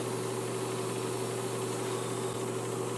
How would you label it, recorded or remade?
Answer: recorded